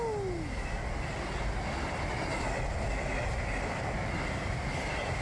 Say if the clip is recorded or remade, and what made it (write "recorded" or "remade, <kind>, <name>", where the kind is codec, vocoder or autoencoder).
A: recorded